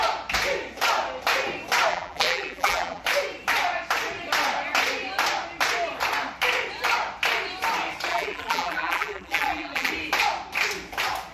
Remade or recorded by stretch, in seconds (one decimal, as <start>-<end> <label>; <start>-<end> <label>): 0.0-1.9 recorded; 1.9-3.0 remade; 3.0-8.1 recorded; 8.1-9.9 remade; 9.9-11.3 recorded